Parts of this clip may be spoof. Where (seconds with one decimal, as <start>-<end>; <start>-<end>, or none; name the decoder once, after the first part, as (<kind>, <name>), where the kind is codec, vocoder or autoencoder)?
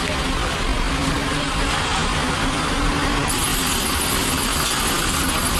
none